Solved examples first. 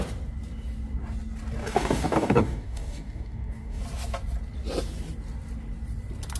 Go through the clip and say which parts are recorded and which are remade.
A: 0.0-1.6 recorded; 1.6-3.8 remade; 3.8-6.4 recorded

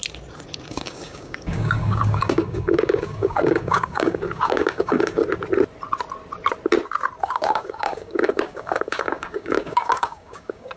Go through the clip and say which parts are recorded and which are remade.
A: 0.0-0.7 recorded; 0.7-5.2 remade; 5.2-7.2 recorded; 7.2-10.8 remade